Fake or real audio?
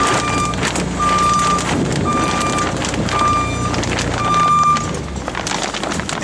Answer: real